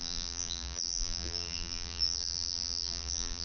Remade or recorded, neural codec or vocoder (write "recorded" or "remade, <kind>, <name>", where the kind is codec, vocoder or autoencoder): remade, vocoder, BigVGAN v2